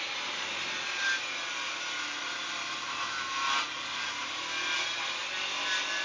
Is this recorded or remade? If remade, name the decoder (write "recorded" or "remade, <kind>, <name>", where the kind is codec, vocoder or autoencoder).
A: recorded